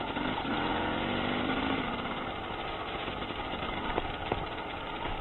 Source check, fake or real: fake